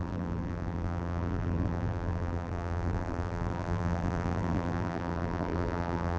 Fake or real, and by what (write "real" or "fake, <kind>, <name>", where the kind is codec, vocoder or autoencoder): fake, vocoder, BigVGAN v2